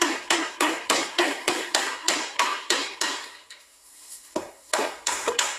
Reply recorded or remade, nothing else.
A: remade